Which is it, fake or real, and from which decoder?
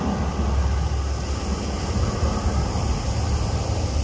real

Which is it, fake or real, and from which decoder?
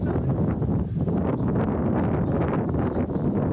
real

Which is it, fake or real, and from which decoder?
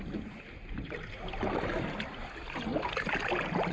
real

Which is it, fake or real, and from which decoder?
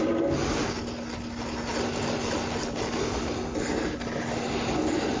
real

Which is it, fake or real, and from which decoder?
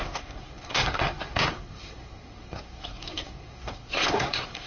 fake, codec, SNAC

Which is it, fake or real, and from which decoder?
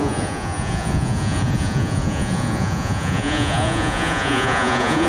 fake, vocoder, Vocos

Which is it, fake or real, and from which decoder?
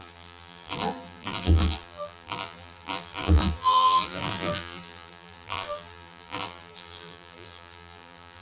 fake, vocoder, BigVGAN v2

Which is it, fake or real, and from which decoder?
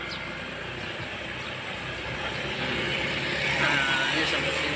real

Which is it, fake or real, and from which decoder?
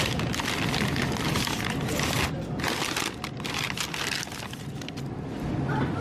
real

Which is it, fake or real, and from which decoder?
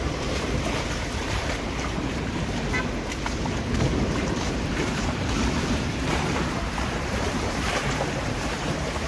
fake, vocoder, BigVGAN v2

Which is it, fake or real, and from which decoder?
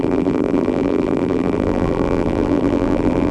fake, vocoder, BigVGAN v2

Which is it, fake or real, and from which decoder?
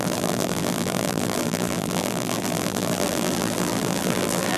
fake, vocoder, BigVGAN v2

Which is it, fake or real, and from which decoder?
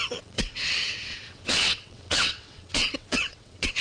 fake, vocoder, WaveNeXt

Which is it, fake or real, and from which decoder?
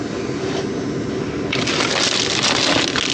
real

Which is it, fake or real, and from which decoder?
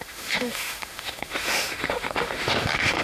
fake, autoencoder, DAC-VAE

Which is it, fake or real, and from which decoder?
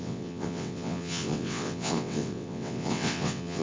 fake, vocoder, WaveNeXt